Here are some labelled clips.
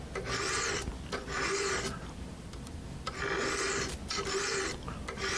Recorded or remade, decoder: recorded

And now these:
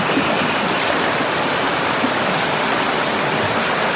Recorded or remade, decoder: recorded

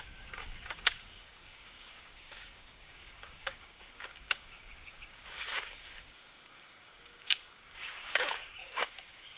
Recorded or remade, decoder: remade, codec, DAC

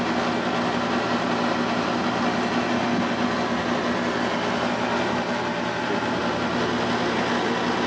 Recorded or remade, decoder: recorded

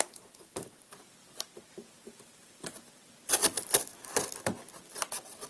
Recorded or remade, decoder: remade, vocoder, BigVGAN v2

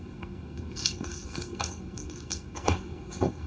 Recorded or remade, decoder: remade, codec, SNAC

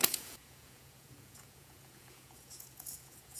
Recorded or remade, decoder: remade, vocoder, Vocos